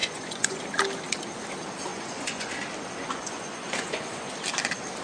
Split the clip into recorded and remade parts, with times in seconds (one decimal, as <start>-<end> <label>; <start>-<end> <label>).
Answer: 0.0-0.6 remade; 0.6-1.9 recorded; 1.9-2.5 remade; 2.5-3.0 recorded; 3.0-4.3 remade; 4.3-5.0 recorded